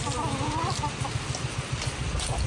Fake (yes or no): no